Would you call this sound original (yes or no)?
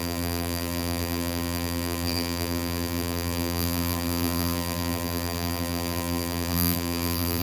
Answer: no